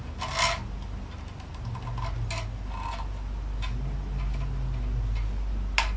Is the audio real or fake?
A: real